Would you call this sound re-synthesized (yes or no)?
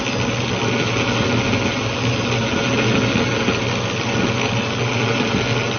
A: no